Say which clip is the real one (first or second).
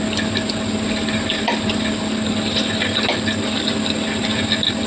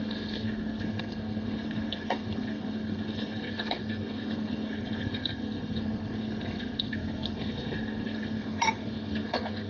first